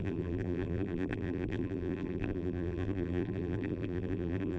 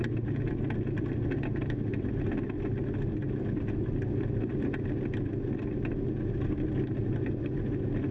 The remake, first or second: first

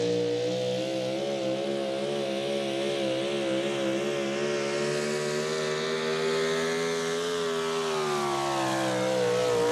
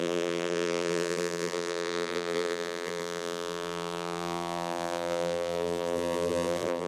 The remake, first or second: second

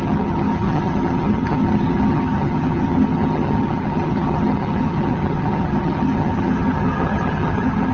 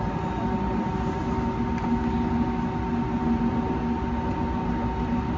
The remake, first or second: first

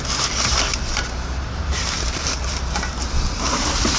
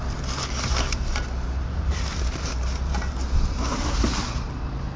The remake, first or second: first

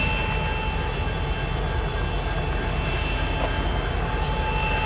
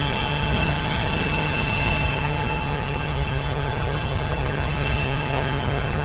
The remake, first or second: second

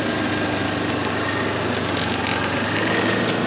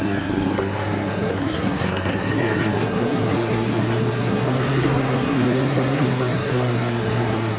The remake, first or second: second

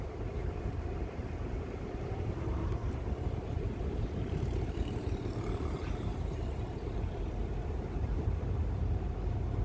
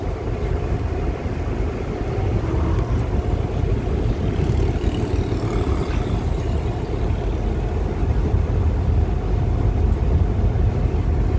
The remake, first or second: first